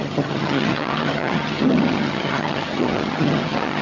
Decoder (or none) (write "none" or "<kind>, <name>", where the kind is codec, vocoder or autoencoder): vocoder, HiFi-GAN